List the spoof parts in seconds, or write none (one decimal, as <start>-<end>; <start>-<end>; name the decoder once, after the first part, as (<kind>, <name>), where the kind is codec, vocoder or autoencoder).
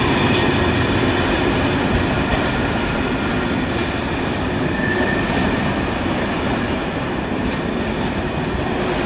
none